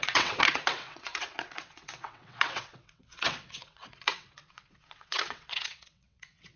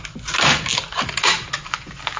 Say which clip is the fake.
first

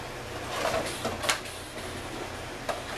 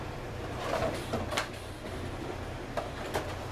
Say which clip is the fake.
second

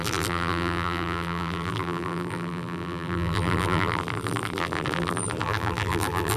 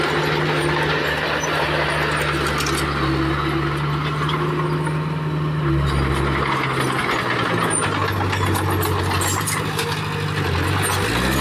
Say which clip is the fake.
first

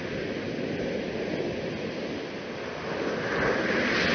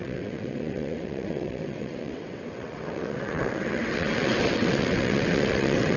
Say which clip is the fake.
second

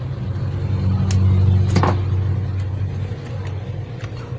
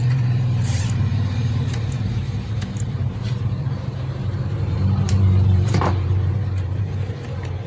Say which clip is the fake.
second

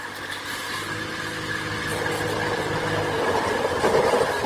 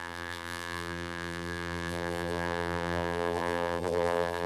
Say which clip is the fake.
second